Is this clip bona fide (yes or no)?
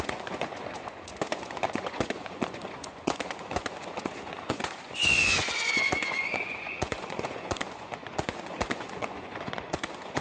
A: no